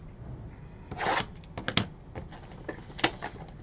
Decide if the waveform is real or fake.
real